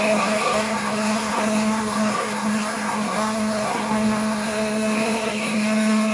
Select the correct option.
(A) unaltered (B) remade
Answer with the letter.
B